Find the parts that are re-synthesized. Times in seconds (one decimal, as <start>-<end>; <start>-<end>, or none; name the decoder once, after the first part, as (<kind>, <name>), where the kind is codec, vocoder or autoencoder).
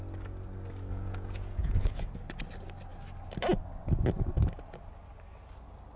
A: 0.9-2.1 (vocoder, Vocos)